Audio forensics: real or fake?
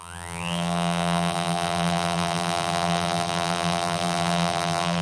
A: fake